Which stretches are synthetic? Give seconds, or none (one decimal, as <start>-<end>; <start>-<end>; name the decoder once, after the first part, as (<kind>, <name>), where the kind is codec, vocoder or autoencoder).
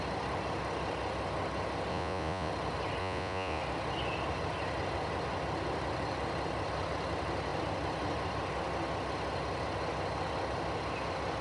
1.9-2.5 (vocoder, Vocos); 3.0-3.6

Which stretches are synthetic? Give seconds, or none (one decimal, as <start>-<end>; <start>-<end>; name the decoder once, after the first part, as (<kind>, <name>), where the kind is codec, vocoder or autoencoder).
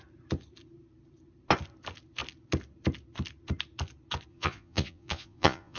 4.3-5.8 (vocoder, Vocos)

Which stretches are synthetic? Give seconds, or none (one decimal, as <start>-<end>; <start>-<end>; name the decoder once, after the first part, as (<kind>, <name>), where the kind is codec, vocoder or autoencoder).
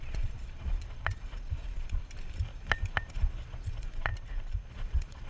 0.0-2.0 (vocoder, Vocos); 3.1-4.1; 4.7-5.3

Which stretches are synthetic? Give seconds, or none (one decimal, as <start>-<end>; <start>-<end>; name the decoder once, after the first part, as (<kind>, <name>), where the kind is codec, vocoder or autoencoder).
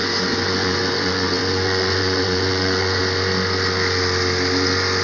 0.0-3.0 (vocoder, Vocos)